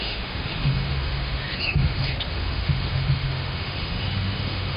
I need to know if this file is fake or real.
fake